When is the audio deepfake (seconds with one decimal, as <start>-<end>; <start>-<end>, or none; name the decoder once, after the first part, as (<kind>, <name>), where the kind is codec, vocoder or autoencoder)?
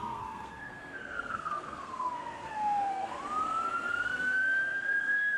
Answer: 0.0-3.1 (codec, SNAC); 3.9-5.4